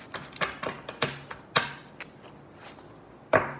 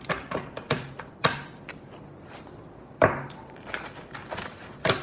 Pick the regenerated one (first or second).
second